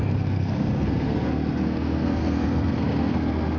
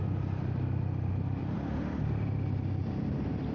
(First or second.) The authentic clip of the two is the second